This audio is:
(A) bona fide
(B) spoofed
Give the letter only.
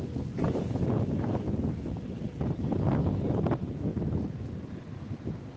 A